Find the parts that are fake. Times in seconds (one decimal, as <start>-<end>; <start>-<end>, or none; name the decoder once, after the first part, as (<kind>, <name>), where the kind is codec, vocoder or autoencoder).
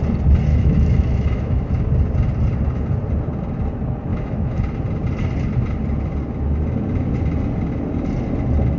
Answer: 0.5-1.7 (autoencoder, DAC-VAE); 4.1-4.6